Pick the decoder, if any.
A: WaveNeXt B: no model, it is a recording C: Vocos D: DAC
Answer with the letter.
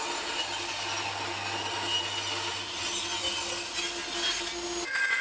B